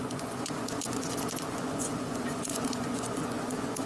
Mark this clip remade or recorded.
remade